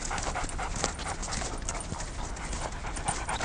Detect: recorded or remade recorded